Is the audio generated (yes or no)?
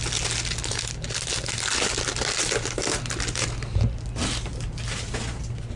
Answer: no